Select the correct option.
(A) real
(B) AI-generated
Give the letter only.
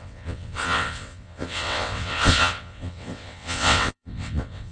B